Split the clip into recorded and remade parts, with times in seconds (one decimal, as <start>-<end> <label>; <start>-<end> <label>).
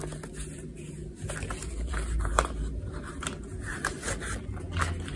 0.0-1.0 recorded; 1.0-4.1 remade; 4.1-5.2 recorded